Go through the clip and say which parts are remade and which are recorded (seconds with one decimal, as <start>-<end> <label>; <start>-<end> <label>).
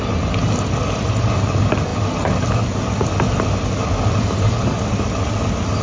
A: 0.0-5.8 recorded